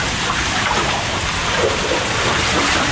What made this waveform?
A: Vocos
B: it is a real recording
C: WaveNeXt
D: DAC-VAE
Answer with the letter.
B